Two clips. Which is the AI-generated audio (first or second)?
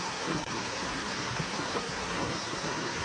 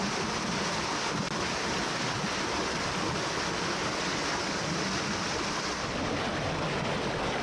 first